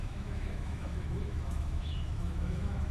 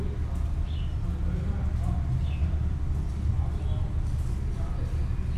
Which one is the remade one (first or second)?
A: first